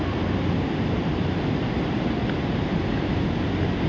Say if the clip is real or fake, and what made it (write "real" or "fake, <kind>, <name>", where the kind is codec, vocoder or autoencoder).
real